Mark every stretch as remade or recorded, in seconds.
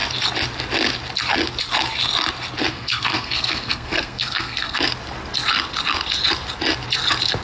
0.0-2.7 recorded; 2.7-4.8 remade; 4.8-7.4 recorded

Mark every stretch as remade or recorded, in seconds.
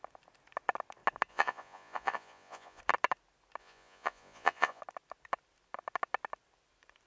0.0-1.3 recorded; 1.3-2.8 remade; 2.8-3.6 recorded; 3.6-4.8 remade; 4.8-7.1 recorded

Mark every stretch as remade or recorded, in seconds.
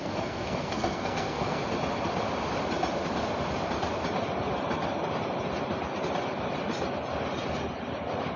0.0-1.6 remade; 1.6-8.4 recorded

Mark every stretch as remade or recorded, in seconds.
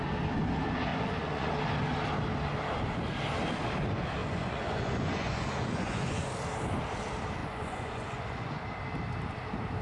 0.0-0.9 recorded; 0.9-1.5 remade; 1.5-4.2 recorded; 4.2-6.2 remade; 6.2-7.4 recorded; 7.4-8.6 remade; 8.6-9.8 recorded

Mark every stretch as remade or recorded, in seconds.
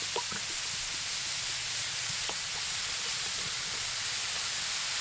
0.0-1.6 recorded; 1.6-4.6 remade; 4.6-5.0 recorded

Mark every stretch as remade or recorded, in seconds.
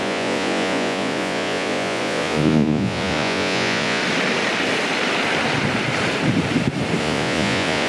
0.0-4.0 remade; 4.0-7.0 recorded; 7.0-7.9 remade